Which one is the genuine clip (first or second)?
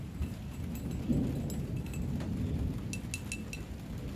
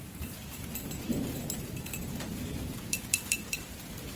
first